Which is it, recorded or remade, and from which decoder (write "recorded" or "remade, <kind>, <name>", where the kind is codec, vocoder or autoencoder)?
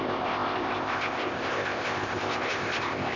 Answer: remade, codec, ZipCodec